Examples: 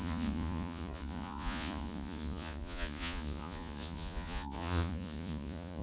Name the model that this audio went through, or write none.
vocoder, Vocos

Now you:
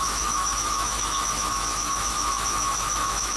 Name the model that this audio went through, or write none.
autoencoder, DAC-VAE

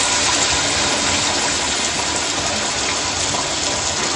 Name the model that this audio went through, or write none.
none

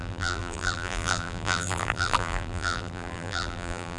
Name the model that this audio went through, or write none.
vocoder, BigVGAN v2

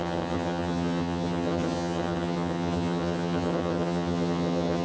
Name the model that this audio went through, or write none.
vocoder, HiFi-GAN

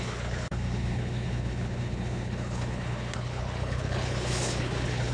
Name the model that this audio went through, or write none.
codec, HILCodec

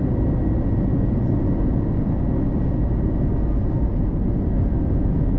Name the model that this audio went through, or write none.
none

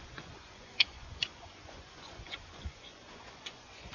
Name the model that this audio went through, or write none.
vocoder, Vocos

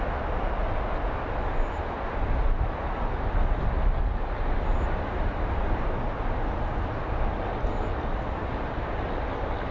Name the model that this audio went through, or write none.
none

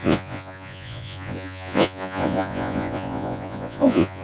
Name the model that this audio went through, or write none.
vocoder, Vocos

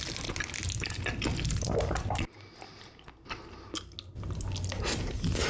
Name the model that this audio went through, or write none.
none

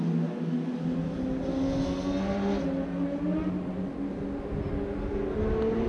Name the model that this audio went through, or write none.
none